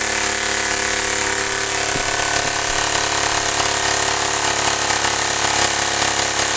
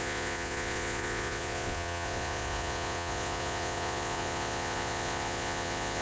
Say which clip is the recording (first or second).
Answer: first